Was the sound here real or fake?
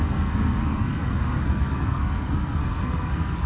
fake